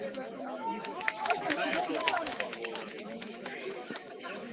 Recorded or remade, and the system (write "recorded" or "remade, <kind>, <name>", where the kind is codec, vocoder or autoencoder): remade, autoencoder, DAC-VAE